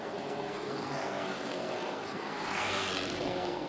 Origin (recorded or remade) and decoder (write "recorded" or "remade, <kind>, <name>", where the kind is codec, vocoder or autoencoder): remade, codec, SNAC